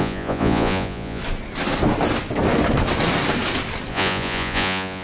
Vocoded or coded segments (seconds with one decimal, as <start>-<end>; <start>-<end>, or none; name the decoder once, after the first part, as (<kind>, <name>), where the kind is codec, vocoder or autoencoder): 0.0-1.2 (vocoder, Vocos); 3.9-5.0